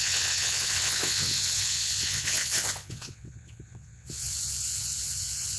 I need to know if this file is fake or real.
fake